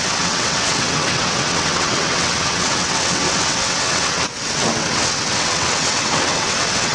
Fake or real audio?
fake